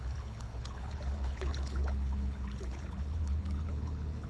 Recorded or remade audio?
remade